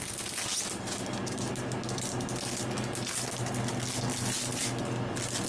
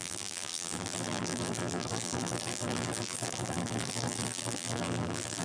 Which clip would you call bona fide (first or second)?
first